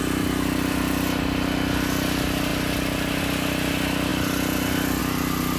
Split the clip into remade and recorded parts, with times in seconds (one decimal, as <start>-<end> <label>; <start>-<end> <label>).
0.0-5.6 recorded